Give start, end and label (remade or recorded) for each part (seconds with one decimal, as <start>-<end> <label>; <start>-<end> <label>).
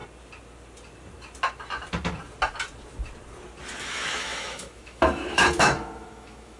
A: 0.0-3.8 recorded; 3.8-6.6 remade